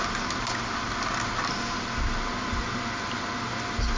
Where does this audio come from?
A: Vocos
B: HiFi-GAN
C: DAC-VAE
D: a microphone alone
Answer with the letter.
D